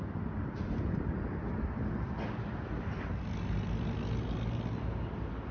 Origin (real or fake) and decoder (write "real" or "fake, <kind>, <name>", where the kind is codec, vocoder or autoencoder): real